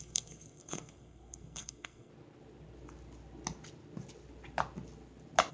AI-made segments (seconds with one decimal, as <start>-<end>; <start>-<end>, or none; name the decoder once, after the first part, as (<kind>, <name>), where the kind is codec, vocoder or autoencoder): 0.0-2.1 (codec, SNAC)